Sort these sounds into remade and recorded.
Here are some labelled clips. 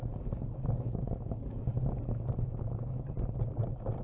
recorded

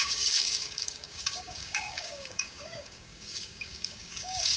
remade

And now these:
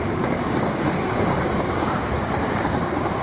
remade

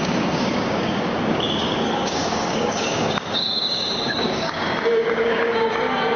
remade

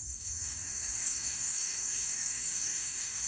remade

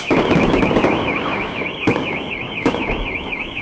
remade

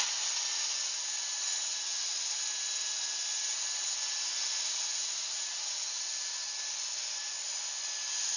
recorded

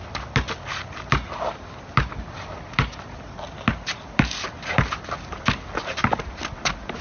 recorded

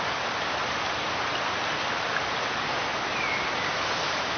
recorded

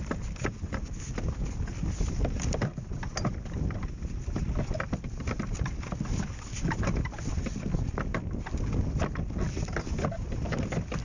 recorded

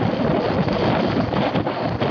recorded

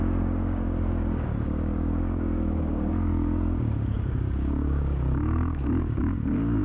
remade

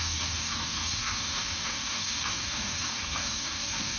remade